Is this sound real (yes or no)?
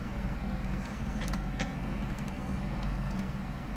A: no